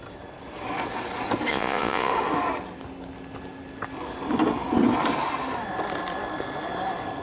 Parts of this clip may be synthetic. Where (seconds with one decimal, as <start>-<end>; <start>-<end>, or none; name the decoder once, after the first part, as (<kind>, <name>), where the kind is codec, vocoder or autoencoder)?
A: 1.5-2.1 (vocoder, Vocos)